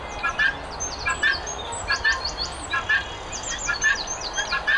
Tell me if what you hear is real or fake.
real